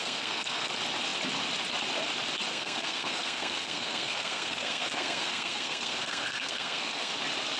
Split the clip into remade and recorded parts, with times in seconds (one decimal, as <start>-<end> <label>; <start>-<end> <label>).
0.0-0.7 remade; 0.7-2.5 recorded; 2.5-7.1 remade; 7.1-7.6 recorded